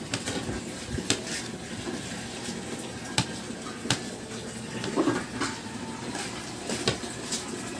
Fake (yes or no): no